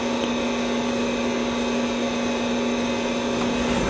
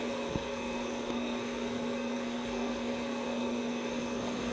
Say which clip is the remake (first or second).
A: second